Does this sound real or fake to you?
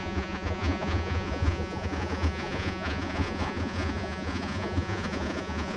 fake